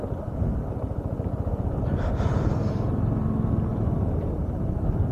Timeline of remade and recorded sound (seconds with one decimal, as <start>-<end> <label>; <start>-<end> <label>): 0.0-5.1 recorded